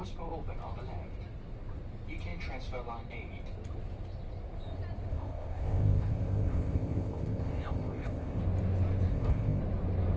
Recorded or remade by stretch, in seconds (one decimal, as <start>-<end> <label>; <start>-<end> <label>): 0.0-5.1 recorded; 5.1-8.4 remade; 8.4-9.1 recorded; 9.1-9.6 remade; 9.6-10.2 recorded